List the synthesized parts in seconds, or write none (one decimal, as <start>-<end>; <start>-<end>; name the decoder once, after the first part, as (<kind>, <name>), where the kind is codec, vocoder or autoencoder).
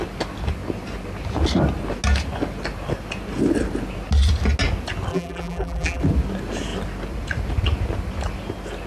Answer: 5.1-6.0 (vocoder, BigVGAN v2)